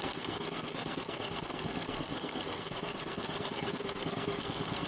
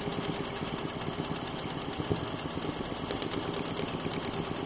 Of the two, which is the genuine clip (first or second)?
second